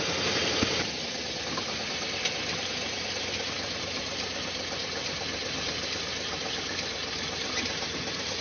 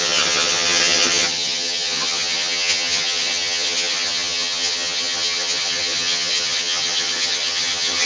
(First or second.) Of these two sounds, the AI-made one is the second